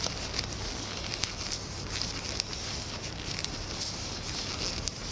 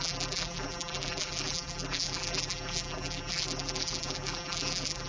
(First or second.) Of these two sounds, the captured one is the first